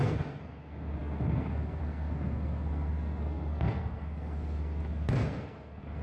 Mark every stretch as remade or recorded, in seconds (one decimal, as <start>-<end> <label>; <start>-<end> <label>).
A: 0.0-6.0 remade